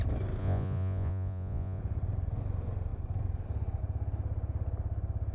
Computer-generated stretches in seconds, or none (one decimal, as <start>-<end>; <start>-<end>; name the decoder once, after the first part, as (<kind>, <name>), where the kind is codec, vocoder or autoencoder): 0.4-1.8 (vocoder, Vocos)